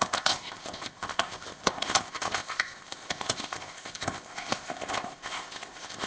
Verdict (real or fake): fake